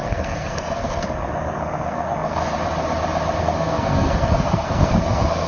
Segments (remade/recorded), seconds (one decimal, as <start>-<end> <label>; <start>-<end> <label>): 0.0-2.4 remade; 2.4-3.4 recorded; 3.4-5.5 remade